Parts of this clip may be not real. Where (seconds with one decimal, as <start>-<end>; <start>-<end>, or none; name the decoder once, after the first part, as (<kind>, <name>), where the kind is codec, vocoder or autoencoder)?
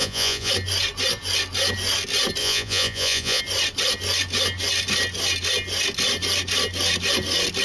0.0-0.5 (vocoder, Vocos); 2.4-3.4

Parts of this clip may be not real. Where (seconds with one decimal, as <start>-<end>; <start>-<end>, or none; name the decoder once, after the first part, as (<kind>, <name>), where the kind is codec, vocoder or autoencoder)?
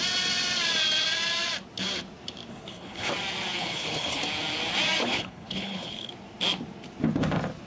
2.5-3.1 (codec, HILCodec); 3.6-4.2; 5.0-6.1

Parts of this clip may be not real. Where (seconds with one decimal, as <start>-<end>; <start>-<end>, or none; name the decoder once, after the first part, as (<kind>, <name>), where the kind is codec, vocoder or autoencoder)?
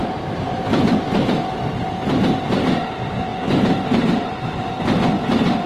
0.0-1.0 (vocoder, BigVGAN v2); 3.3-4.6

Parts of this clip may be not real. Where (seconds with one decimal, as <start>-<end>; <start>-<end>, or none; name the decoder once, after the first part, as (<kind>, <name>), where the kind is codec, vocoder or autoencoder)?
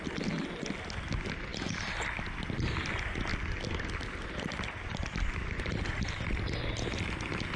1.5-2.4 (vocoder, BigVGAN v2); 3.3-6.6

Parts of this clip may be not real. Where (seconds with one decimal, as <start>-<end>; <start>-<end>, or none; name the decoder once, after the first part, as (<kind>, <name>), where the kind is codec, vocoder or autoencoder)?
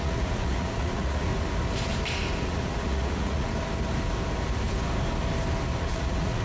0.0-1.3 (vocoder, Vocos); 2.4-3.5; 5.8-6.4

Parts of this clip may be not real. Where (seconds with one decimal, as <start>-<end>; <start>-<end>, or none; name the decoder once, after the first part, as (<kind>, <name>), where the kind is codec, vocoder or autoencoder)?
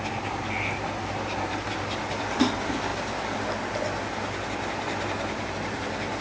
none